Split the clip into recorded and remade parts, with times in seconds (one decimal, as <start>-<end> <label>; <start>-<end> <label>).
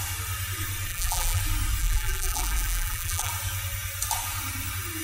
0.0-0.9 recorded; 0.9-1.4 remade; 1.4-1.8 recorded; 1.8-3.3 remade; 3.3-5.0 recorded